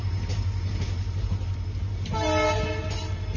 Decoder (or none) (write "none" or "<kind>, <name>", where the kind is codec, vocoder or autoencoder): none